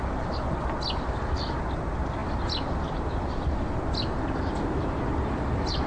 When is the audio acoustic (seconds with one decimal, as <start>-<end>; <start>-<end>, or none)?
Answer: 0.0-5.9